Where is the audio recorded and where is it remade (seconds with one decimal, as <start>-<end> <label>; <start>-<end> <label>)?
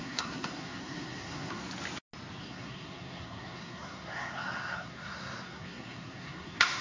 0.0-1.6 remade; 1.6-2.4 recorded; 2.4-6.8 remade